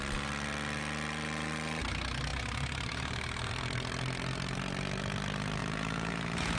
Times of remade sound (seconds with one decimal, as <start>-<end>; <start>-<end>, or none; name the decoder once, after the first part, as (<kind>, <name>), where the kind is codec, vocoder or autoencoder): 2.3-3.5 (vocoder, BigVGAN v2); 5.6-6.6